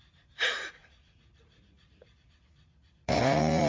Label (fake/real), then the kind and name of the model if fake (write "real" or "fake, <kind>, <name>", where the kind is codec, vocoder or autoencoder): fake, vocoder, Vocos